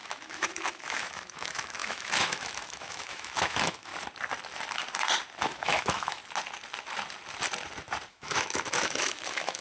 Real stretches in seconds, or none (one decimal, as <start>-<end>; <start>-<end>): 3.9-5.4; 6.2-8.1